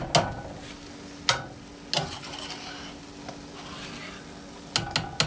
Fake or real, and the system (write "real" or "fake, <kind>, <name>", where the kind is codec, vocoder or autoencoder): real